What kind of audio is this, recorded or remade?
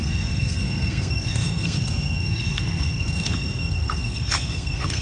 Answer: remade